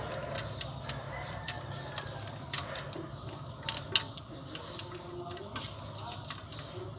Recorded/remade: recorded